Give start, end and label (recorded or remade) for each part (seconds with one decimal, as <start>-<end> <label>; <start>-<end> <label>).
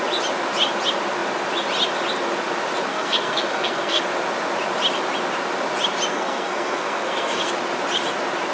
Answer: 0.0-2.9 recorded; 2.9-4.0 remade; 4.0-6.1 recorded; 6.1-7.5 remade; 7.5-8.5 recorded